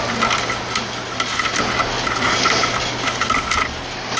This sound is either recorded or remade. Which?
recorded